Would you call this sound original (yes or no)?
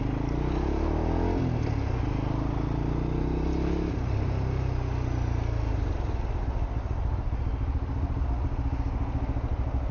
yes